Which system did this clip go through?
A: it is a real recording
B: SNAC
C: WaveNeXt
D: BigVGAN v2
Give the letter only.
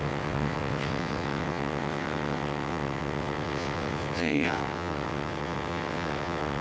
C